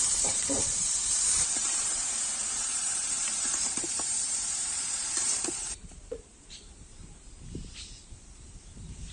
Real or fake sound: fake